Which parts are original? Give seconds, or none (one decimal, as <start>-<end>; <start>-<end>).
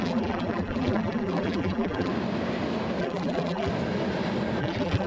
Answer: 2.1-3.0; 3.7-4.6